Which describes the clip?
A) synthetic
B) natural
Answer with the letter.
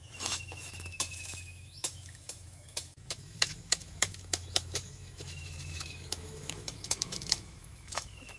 A